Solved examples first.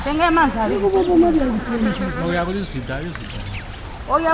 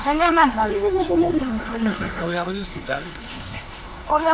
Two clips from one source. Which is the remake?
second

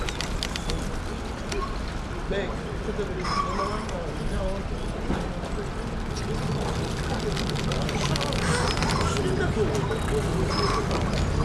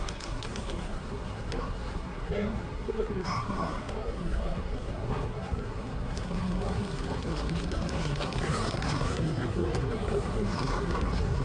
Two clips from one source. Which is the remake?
second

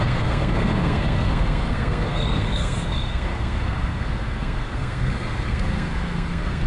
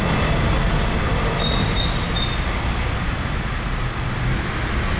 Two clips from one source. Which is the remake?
first